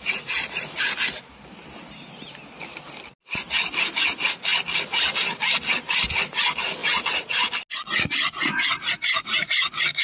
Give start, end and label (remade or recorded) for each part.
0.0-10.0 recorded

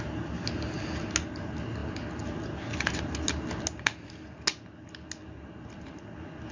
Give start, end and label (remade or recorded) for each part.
0.0-6.5 recorded

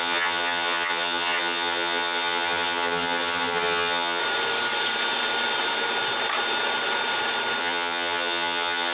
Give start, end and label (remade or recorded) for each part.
0.0-4.2 remade; 4.2-7.6 recorded; 7.6-8.9 remade

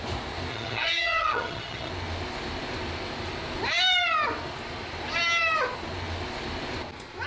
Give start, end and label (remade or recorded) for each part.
0.0-0.5 recorded; 0.5-1.9 remade; 1.9-7.3 recorded